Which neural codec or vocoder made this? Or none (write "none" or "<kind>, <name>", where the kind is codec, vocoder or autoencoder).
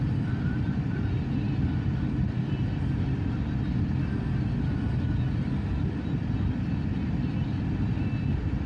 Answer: none